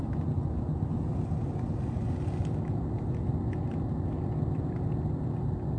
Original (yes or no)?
yes